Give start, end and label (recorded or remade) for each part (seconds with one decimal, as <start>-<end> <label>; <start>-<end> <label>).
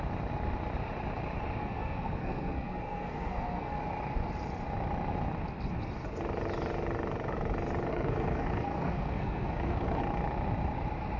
0.0-1.6 recorded; 1.6-3.8 remade; 3.8-7.9 recorded; 7.9-10.0 remade; 10.0-11.2 recorded